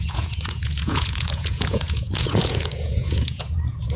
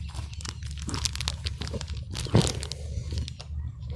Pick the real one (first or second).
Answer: second